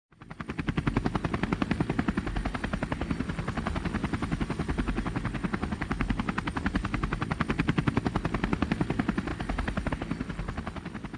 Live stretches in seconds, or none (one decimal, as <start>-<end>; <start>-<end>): 0.0-11.2

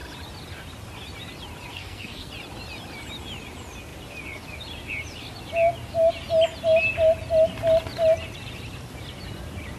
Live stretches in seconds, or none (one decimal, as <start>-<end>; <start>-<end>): 0.0-1.7; 2.3-9.8

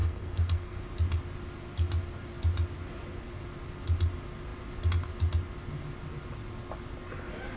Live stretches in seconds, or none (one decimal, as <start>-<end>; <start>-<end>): 0.8-7.6

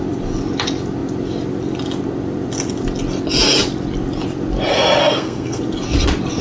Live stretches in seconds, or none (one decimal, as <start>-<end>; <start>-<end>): 0.0-5.0; 5.6-6.4